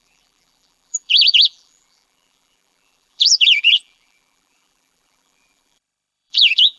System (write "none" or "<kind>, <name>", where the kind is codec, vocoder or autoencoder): vocoder, BigVGAN v2